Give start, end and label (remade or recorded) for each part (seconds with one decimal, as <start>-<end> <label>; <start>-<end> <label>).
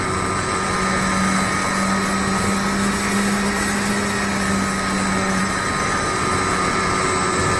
0.0-5.4 recorded; 5.4-6.3 remade; 6.3-7.6 recorded